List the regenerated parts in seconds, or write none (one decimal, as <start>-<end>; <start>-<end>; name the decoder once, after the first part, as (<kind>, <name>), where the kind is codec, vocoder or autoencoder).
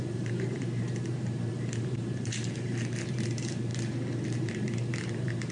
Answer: 0.0-3.7 (vocoder, BigVGAN v2); 4.4-5.5